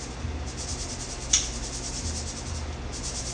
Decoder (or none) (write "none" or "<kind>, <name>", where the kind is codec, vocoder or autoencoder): none